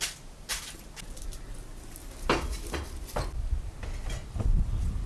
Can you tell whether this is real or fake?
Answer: real